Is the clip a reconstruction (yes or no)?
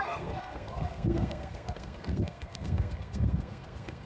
yes